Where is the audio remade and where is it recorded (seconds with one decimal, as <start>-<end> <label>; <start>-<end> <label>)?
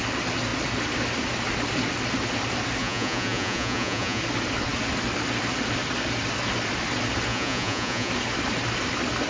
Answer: 0.0-2.8 recorded; 2.8-4.2 remade; 4.2-7.3 recorded; 7.3-8.1 remade; 8.1-9.3 recorded